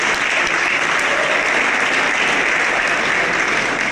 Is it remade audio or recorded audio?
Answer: recorded